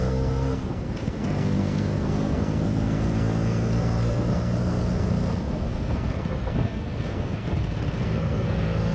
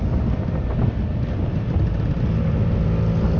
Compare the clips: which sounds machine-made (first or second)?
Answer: first